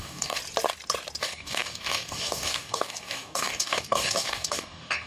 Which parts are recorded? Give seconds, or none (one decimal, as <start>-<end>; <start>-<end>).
0.4-1.2